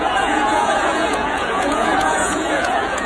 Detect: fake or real fake